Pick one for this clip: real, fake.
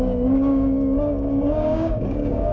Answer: fake